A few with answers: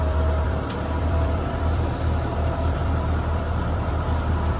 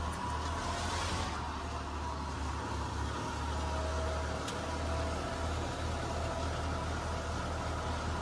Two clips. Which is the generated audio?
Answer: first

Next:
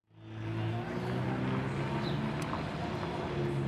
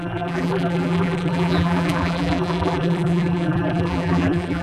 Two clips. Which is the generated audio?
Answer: second